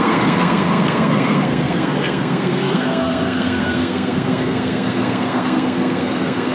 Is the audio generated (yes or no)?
yes